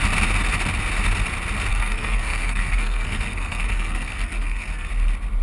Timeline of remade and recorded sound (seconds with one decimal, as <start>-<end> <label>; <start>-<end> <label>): 0.0-1.7 recorded; 1.7-4.9 remade; 4.9-5.4 recorded